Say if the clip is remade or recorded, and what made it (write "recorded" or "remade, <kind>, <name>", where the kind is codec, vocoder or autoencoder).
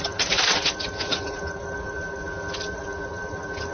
recorded